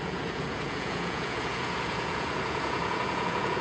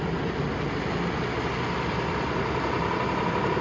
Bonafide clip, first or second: second